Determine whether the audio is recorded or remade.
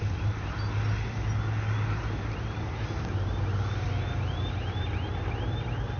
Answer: recorded